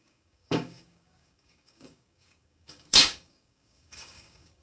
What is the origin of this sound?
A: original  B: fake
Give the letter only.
B